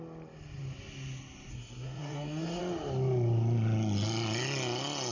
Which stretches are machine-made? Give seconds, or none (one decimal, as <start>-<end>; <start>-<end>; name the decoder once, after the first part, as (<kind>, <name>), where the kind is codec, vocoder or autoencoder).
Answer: 1.5-2.6 (codec, SNAC)